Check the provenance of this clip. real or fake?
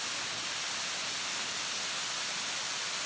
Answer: real